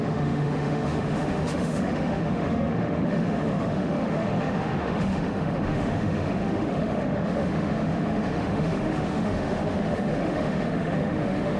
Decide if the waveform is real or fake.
fake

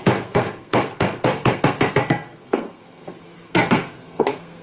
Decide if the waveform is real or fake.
fake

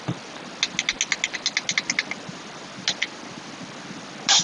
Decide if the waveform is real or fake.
real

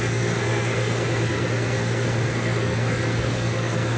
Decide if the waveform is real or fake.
fake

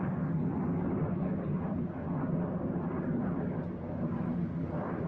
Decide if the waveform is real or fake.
fake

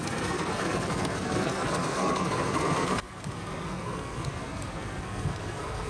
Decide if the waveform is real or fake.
fake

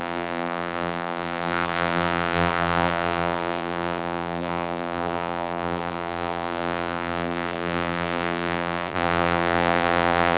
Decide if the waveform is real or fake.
fake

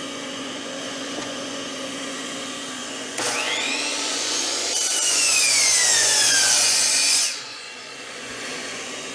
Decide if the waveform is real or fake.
fake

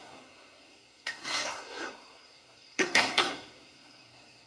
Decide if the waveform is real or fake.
fake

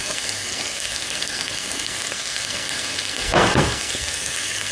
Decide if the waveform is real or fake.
fake